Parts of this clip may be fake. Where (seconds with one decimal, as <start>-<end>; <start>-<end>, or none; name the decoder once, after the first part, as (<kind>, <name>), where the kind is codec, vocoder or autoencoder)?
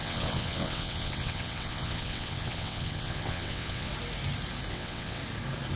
0.0-3.9 (vocoder, WaveNeXt); 4.7-5.2